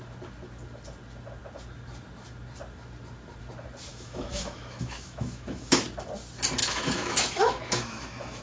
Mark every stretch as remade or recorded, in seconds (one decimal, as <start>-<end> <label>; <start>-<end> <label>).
0.0-3.9 recorded; 3.9-5.8 remade; 5.8-6.6 recorded; 6.6-8.4 remade